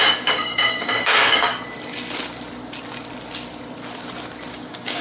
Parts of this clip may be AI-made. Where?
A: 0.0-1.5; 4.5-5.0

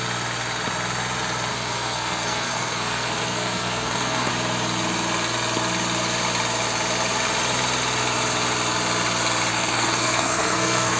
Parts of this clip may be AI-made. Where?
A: 1.5-4.3; 9.5-11.0